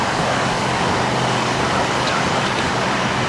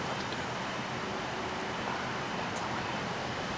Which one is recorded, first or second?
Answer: second